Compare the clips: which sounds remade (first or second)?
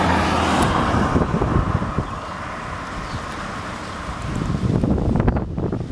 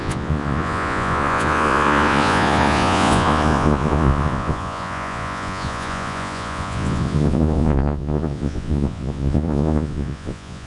second